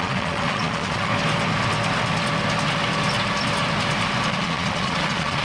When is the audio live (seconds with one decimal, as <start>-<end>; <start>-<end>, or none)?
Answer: 1.1-4.3